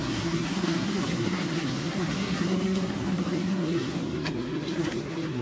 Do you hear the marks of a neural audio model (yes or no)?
yes